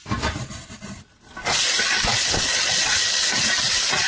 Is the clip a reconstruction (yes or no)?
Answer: no